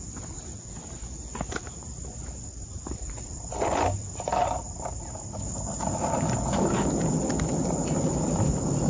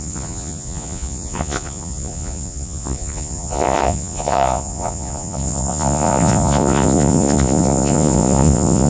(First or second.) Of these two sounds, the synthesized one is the second